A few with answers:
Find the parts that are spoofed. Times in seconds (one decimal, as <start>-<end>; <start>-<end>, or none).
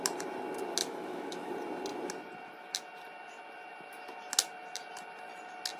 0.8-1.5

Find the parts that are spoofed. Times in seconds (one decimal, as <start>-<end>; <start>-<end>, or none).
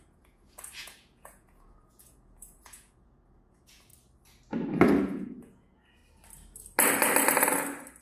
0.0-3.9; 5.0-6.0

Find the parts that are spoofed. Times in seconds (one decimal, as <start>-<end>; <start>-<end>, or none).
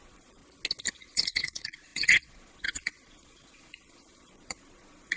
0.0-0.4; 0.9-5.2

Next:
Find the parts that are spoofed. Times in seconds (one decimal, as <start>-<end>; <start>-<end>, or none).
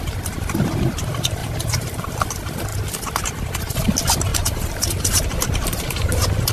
1.4-2.2; 4.3-6.5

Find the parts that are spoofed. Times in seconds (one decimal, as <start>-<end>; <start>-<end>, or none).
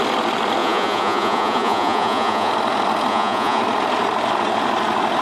0.6-2.5; 3.1-3.6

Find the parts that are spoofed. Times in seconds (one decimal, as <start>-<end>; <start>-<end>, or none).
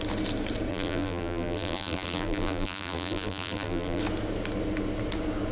0.7-4.0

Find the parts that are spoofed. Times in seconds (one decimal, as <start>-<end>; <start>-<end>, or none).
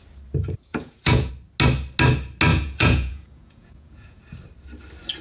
0.7-1.3; 2.5-4.2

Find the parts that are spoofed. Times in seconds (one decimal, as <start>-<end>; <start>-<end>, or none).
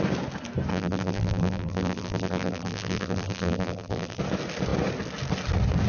0.7-4.2